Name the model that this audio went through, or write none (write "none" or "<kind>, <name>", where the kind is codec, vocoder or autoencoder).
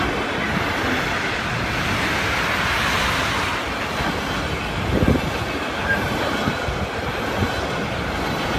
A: none